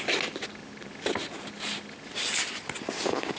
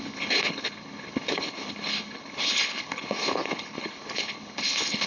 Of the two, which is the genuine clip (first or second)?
first